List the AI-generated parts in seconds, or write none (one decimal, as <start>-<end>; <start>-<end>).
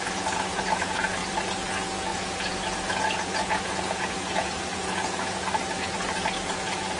0.0-1.2; 1.7-7.0